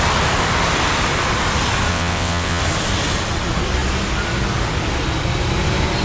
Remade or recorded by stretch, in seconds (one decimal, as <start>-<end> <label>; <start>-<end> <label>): 0.0-1.9 recorded; 1.9-2.6 remade; 2.6-6.0 recorded